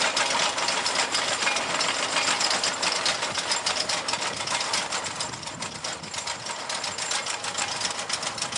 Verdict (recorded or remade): recorded